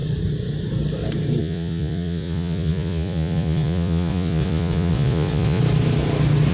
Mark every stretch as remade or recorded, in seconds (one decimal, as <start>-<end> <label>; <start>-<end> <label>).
0.0-1.4 recorded; 1.4-5.6 remade; 5.6-6.5 recorded

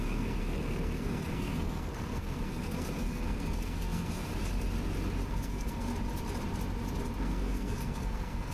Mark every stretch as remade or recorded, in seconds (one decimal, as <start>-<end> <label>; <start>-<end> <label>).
0.0-4.3 remade; 4.3-5.3 recorded; 5.3-5.9 remade; 5.9-7.2 recorded; 7.2-8.5 remade

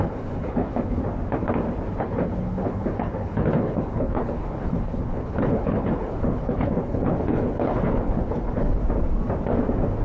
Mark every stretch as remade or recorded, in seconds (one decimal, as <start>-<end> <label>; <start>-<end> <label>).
0.0-1.0 remade; 1.0-2.0 recorded; 2.0-8.8 remade; 8.8-10.0 recorded

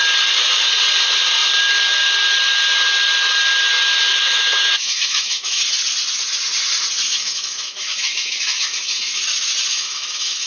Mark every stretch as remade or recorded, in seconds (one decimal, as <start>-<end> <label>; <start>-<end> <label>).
0.0-4.1 recorded; 4.1-5.6 remade; 5.6-7.1 recorded; 7.1-9.2 remade; 9.2-9.7 recorded; 9.7-10.5 remade

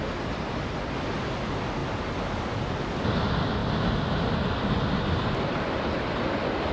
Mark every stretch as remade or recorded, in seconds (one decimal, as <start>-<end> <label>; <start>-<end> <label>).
0.0-6.7 recorded